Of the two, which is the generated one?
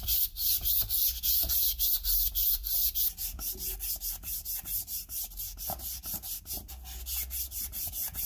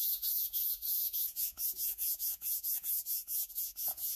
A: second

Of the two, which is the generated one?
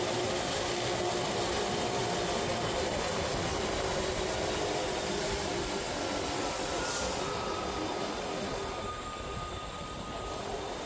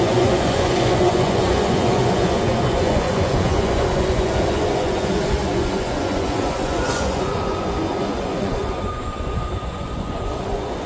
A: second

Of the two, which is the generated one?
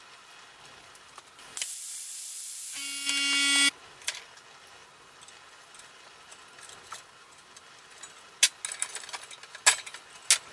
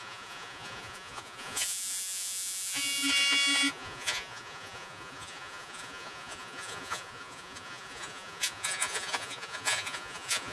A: second